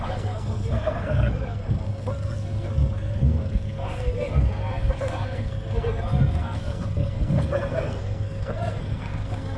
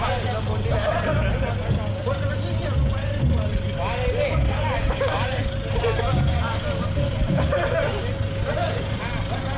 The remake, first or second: first